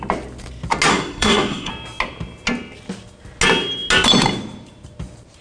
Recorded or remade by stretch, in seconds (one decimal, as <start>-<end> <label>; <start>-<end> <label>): 0.0-0.9 recorded; 0.9-1.7 remade; 1.7-5.4 recorded